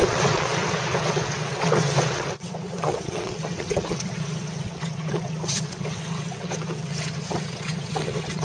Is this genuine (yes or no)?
no